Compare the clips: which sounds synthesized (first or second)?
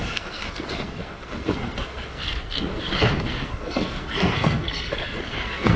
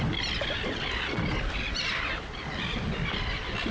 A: first